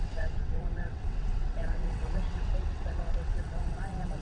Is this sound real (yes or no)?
no